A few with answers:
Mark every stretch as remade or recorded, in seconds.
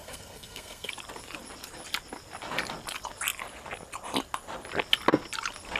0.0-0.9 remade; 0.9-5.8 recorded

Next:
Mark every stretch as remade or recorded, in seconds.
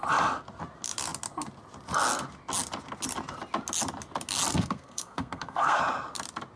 0.0-4.5 recorded; 4.5-5.8 remade; 5.8-6.6 recorded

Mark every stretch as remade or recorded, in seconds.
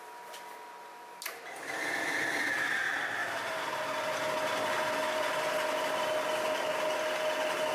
0.0-7.7 recorded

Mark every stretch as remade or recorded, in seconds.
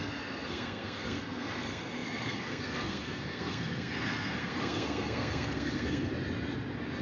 0.0-6.1 remade; 6.1-7.0 recorded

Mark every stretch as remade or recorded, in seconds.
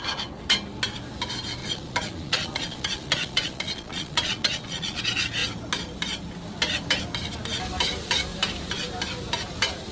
0.0-1.6 recorded; 1.6-5.0 remade; 5.0-9.9 recorded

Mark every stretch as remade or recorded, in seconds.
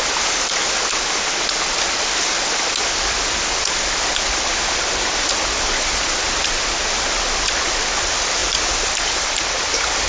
0.0-10.1 recorded